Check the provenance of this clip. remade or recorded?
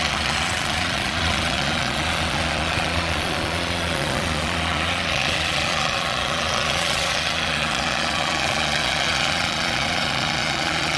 remade